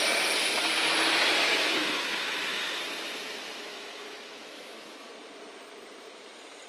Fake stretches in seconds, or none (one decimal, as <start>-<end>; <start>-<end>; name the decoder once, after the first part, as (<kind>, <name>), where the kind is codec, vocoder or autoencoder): 1.5-2.8 (autoencoder, DAC-VAE); 3.7-5.1